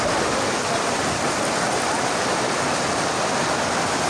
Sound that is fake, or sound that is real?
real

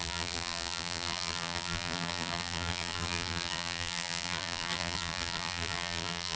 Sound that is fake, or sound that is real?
fake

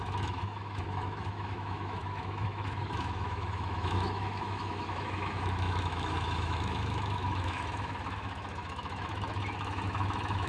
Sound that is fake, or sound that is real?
fake